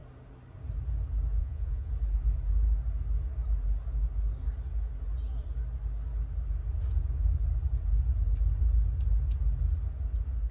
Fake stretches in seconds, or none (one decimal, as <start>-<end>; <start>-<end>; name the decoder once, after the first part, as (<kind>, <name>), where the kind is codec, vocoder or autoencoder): 1.4-1.9 (vocoder, Vocos)